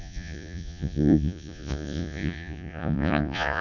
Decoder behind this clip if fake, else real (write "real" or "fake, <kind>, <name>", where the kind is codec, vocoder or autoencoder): fake, vocoder, Vocos